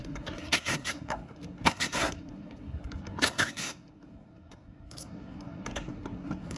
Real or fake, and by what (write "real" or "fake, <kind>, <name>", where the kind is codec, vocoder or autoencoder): fake, codec, SNAC